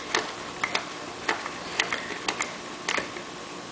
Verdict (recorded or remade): recorded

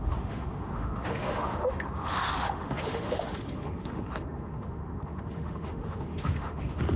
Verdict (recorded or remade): remade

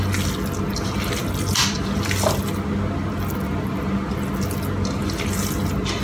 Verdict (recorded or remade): recorded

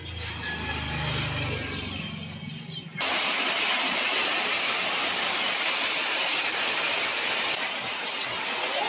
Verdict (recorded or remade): recorded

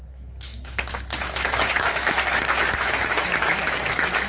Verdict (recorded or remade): remade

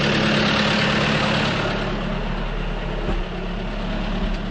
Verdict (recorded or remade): recorded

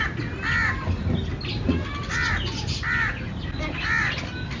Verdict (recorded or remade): recorded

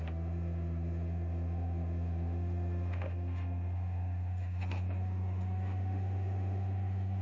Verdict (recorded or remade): remade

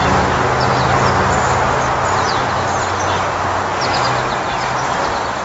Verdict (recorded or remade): recorded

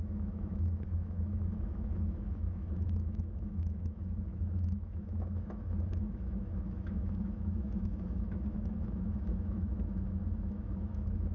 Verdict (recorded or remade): remade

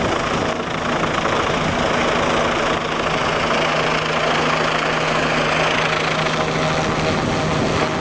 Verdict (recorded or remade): recorded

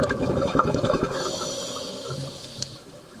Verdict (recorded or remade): remade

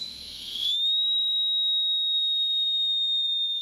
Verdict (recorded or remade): remade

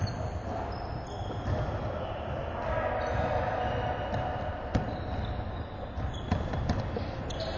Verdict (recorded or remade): recorded